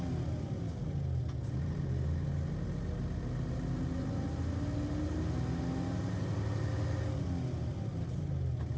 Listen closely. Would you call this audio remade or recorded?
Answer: recorded